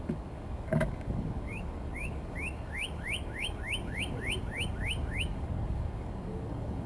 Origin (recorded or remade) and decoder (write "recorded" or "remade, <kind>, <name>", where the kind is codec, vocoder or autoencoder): remade, codec, DAC